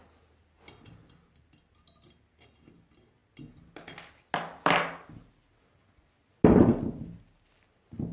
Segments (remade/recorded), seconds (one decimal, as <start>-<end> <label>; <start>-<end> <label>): 0.0-8.1 recorded